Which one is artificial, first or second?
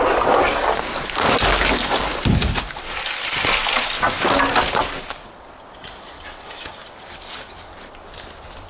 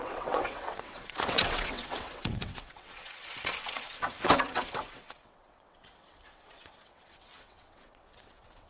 second